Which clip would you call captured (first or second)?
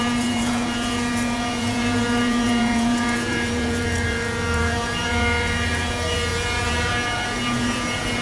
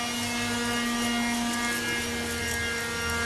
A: second